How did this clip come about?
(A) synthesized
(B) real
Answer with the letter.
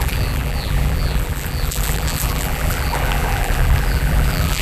A